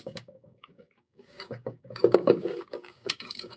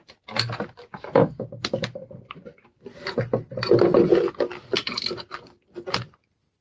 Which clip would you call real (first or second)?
second